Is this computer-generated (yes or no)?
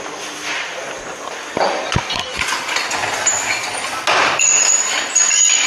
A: no